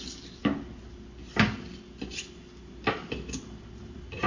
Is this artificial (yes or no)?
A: no